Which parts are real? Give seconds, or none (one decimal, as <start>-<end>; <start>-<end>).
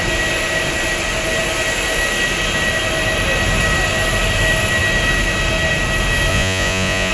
0.0-6.3